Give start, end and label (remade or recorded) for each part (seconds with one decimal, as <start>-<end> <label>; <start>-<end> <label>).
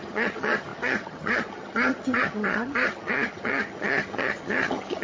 0.0-5.0 remade